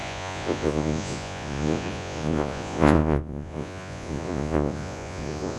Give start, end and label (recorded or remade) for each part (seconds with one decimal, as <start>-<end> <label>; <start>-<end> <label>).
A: 0.0-5.6 remade